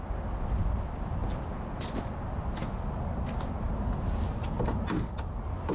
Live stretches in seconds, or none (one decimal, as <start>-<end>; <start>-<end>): 0.0-5.7